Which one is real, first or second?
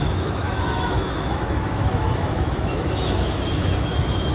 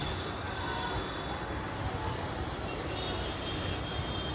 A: second